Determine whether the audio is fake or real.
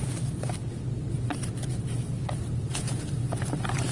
real